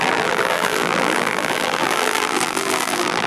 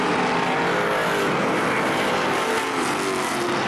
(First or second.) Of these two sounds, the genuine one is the second